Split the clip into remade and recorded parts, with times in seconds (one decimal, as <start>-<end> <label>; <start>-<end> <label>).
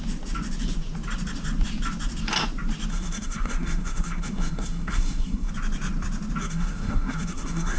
0.0-2.9 recorded; 2.9-5.5 remade; 5.5-6.4 recorded; 6.4-7.8 remade